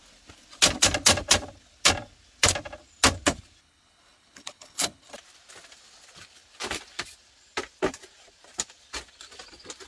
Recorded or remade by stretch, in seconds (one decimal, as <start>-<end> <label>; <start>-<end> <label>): 0.0-3.6 recorded; 3.6-5.1 remade; 5.1-9.9 recorded